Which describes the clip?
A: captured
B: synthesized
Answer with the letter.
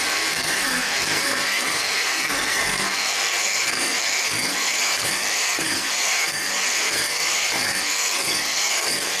B